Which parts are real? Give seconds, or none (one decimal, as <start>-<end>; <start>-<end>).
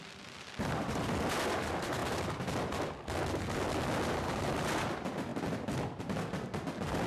2.0-4.2; 5.3-6.0